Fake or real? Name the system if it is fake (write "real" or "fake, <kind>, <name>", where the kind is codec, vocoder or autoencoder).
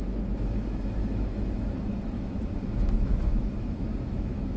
fake, autoencoder, DAC-VAE